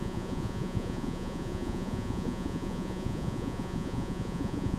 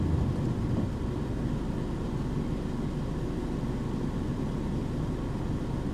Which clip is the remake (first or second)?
first